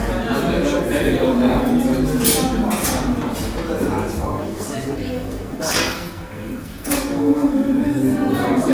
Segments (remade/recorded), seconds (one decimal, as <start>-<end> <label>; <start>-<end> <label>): 0.0-1.0 recorded; 1.0-1.7 remade; 1.7-4.2 recorded; 4.2-8.7 remade